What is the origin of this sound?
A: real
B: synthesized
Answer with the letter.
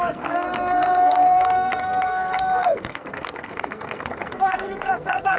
B